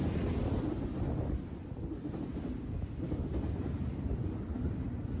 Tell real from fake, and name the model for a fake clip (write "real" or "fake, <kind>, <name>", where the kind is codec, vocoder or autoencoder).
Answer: real